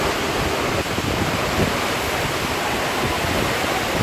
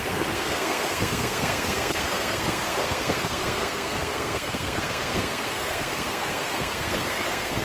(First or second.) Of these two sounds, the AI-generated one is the second